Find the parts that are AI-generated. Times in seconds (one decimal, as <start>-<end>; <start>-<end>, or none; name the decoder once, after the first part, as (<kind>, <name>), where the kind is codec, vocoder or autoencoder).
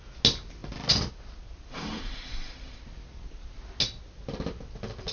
1.7-2.8 (autoencoder, DAC-VAE)